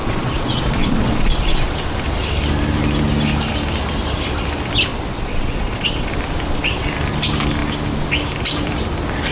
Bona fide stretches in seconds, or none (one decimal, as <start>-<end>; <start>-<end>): 1.7-4.9; 6.1-9.3